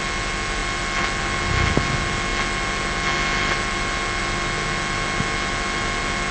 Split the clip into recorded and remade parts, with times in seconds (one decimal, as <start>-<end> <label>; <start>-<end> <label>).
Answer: 0.0-6.3 recorded